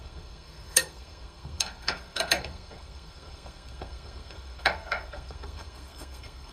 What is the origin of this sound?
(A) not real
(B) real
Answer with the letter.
A